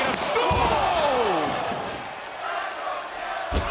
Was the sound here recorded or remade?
recorded